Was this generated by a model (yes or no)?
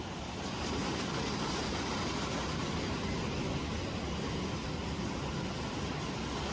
no